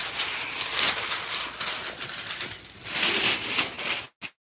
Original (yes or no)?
yes